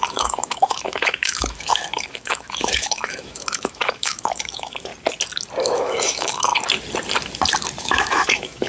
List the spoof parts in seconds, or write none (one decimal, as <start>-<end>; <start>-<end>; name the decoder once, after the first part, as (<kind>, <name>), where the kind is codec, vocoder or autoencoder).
0.0-4.9 (autoencoder, DAC-VAE); 5.6-6.5; 7.8-8.7